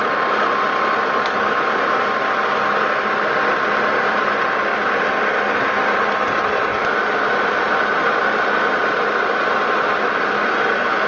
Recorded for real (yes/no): yes